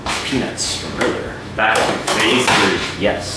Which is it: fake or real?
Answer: fake